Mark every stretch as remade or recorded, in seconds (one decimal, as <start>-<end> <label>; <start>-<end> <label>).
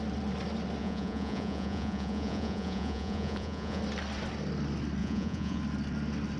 0.0-0.8 recorded; 0.8-3.8 remade; 3.8-5.0 recorded; 5.0-5.6 remade; 5.6-6.4 recorded